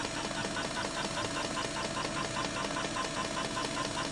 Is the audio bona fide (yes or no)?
yes